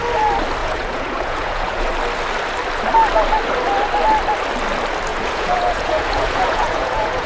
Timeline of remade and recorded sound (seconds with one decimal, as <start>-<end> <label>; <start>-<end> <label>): 0.0-0.6 recorded; 0.6-1.9 remade; 1.9-5.1 recorded; 5.1-7.3 remade